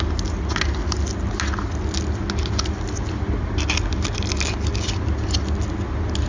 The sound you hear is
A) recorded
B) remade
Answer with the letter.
A